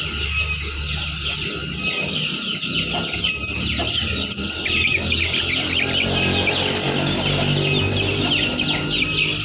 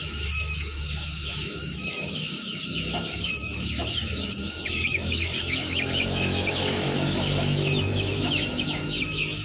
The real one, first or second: first